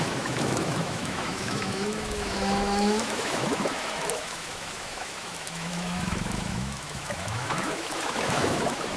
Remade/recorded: remade